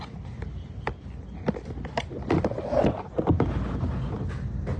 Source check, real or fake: real